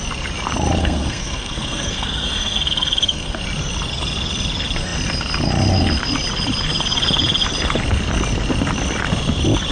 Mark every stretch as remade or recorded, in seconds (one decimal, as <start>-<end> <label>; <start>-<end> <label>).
0.0-0.8 recorded; 0.8-3.4 remade; 3.4-9.7 recorded

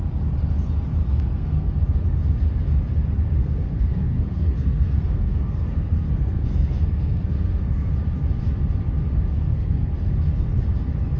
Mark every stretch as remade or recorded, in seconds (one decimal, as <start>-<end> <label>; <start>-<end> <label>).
0.0-1.0 recorded; 1.0-1.7 remade; 1.7-3.4 recorded; 3.4-7.9 remade; 7.9-9.3 recorded; 9.3-9.9 remade; 9.9-11.2 recorded